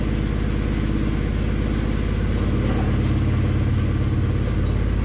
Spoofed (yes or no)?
no